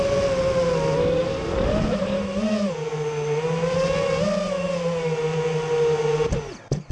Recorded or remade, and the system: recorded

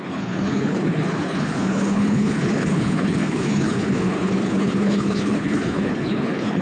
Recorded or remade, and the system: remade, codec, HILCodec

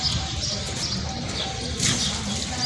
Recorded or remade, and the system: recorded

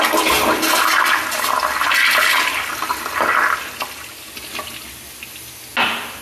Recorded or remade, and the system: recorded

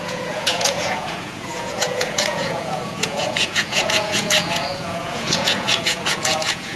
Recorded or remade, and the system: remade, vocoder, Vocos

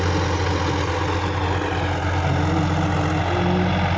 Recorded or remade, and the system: recorded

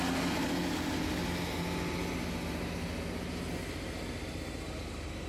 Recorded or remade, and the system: recorded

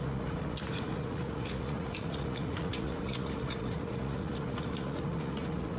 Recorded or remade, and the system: remade, vocoder, Vocos